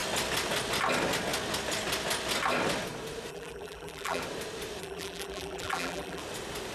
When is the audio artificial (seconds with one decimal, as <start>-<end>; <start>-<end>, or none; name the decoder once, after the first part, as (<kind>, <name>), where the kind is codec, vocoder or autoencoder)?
3.3-4.2 (vocoder, BigVGAN v2); 4.8-6.2